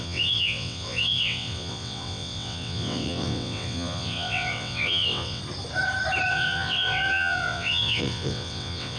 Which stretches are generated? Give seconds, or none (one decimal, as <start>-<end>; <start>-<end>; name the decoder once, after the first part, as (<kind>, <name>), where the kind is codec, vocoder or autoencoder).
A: 0.0-5.4 (vocoder, WaveNeXt); 6.3-9.0